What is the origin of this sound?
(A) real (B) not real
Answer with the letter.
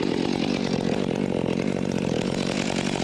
B